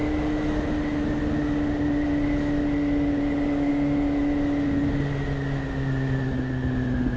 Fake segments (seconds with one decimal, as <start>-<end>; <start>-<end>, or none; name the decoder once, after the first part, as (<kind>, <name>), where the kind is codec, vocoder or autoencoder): none